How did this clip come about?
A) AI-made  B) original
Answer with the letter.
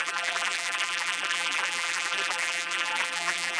A